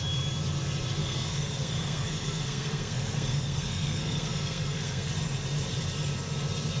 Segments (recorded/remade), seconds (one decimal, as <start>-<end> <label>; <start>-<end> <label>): 0.0-1.0 recorded; 1.0-5.1 remade; 5.1-6.8 recorded